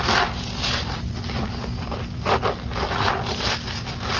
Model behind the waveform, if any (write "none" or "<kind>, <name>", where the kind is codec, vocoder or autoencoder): none